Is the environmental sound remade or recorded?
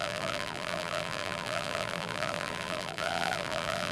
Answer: remade